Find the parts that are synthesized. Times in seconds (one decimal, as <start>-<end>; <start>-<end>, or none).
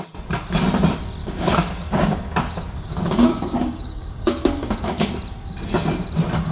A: 1.2-5.1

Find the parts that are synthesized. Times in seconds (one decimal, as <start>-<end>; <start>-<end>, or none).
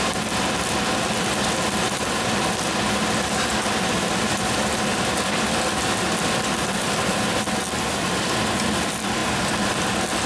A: none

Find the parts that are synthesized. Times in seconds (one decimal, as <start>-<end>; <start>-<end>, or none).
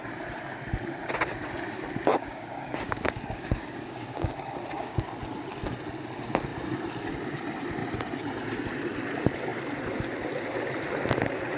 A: 2.1-5.1